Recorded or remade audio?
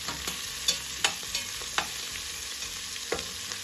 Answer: recorded